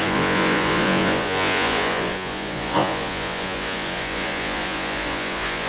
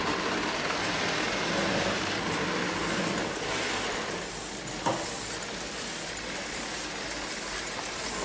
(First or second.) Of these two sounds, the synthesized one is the first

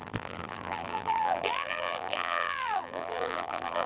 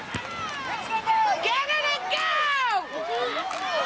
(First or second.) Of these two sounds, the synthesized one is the first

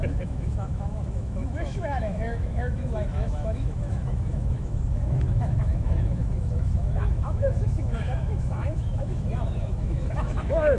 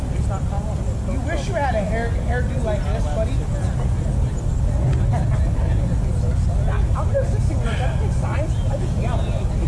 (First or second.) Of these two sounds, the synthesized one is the first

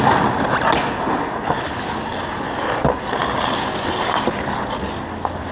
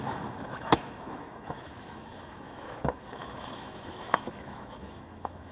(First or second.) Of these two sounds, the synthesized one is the second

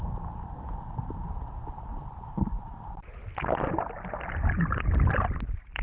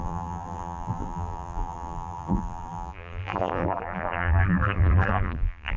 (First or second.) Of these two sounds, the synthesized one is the second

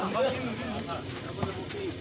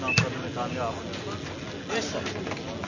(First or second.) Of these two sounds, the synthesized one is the first